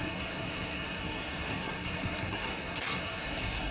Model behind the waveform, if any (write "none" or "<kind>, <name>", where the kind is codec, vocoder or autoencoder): codec, SNAC